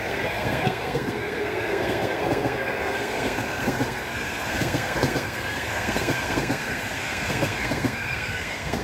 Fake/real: fake